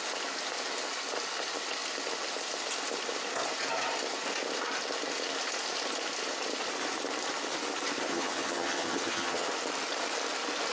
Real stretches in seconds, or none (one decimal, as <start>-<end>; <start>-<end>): 0.0-8.1; 9.5-10.7